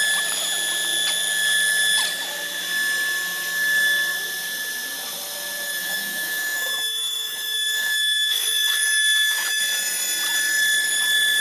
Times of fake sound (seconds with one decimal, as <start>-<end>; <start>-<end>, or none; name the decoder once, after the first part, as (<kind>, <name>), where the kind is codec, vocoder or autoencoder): 5.8-9.6 (autoencoder, DAC-VAE)